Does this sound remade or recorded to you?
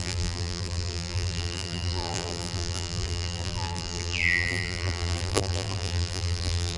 remade